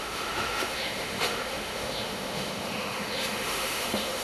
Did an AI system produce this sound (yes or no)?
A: yes